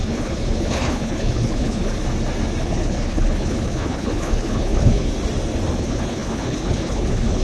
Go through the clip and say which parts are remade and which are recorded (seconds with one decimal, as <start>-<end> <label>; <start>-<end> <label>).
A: 0.0-1.9 remade; 1.9-2.6 recorded; 2.6-5.1 remade; 5.1-5.8 recorded; 5.8-7.4 remade